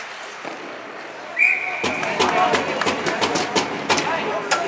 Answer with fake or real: real